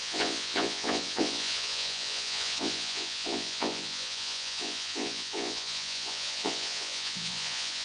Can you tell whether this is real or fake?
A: fake